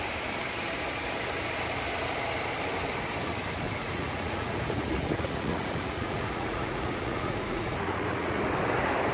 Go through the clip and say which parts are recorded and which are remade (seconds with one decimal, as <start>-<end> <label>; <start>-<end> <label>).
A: 0.0-3.8 recorded; 3.8-8.4 remade; 8.4-9.1 recorded